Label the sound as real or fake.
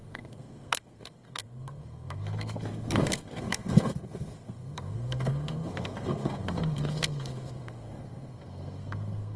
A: fake